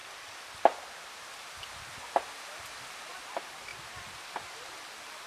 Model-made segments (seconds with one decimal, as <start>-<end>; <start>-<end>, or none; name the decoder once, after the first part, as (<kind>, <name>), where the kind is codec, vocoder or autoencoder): none